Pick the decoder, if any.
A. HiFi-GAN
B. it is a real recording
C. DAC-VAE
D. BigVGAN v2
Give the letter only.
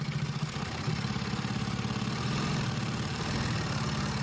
D